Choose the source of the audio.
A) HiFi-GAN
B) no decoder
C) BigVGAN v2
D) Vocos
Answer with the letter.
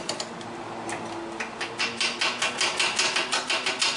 B